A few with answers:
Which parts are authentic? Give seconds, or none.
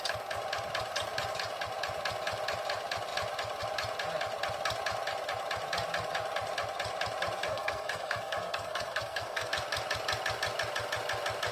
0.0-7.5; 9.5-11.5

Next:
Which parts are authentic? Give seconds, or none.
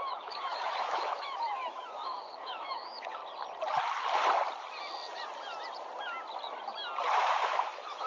3.2-7.2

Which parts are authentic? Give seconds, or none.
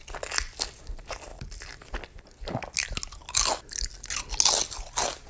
0.0-5.3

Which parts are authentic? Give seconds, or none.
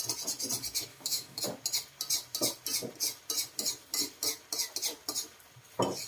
0.0-0.9; 1.4-6.1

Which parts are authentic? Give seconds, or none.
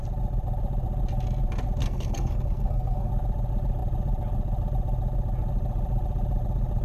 0.0-1.8; 3.1-6.8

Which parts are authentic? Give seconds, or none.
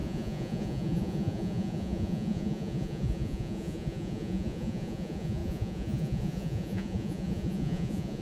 none